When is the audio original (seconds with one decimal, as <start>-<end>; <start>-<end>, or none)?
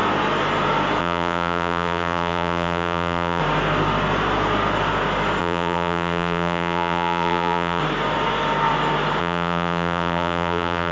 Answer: 0.0-1.0; 3.4-5.4; 7.8-9.2